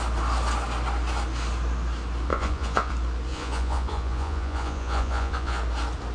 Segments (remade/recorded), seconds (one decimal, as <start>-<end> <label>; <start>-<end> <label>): 0.0-2.3 recorded; 2.3-2.9 remade; 2.9-3.3 recorded; 3.3-5.6 remade; 5.6-6.1 recorded